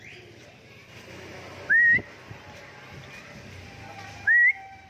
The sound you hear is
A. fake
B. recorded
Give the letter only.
B